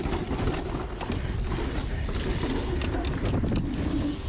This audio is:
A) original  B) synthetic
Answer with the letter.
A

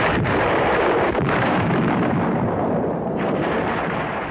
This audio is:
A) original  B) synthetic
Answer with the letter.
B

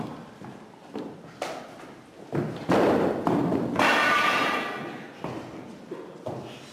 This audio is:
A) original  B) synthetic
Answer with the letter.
A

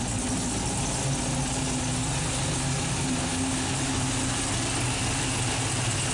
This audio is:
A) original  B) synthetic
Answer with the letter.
A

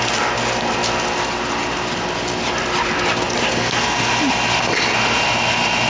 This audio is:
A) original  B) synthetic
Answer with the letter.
A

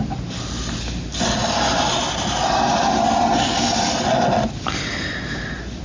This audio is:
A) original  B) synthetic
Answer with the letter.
A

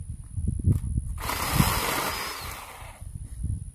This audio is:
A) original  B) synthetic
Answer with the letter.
A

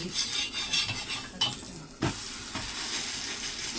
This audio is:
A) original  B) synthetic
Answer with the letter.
A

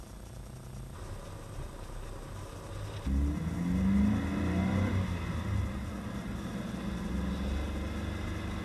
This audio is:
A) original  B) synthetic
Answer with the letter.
A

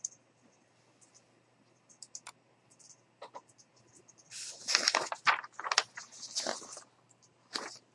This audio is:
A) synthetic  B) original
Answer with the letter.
B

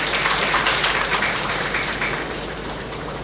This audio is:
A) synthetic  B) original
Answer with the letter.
A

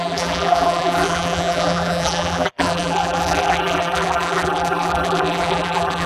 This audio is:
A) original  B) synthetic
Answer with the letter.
B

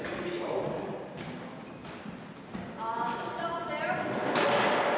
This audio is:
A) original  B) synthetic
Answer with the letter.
A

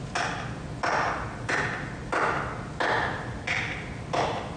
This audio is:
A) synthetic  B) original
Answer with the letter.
B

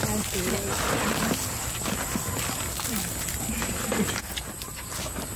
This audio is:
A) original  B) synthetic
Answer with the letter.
A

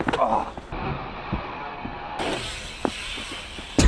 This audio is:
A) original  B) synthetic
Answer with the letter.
A